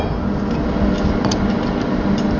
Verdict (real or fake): real